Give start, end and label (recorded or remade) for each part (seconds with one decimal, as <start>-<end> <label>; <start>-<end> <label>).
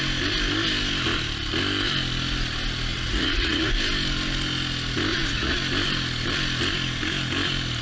0.0-2.9 recorded; 2.9-3.7 remade; 3.7-5.1 recorded; 5.1-5.6 remade; 5.6-7.8 recorded